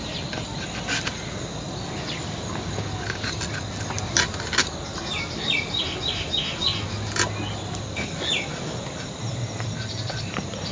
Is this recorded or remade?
recorded